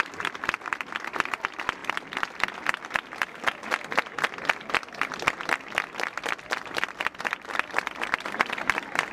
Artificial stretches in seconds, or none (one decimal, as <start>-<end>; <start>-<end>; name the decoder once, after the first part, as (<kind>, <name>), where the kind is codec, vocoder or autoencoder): 0.0-1.8 (vocoder, BigVGAN v2); 7.0-9.1